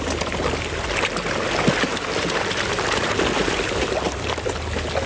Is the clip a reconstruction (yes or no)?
no